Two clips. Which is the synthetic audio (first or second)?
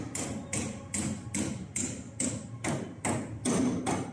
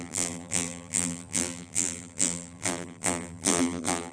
second